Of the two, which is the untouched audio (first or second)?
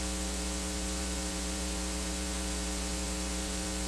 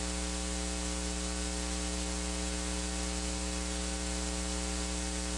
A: second